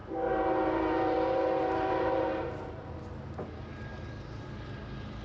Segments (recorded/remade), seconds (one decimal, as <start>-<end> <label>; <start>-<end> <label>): 0.0-3.1 remade; 3.1-3.9 recorded; 3.9-4.4 remade; 4.4-5.2 recorded